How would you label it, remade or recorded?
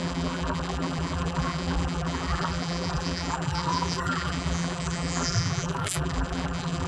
remade